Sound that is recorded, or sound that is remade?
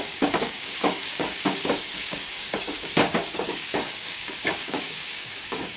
remade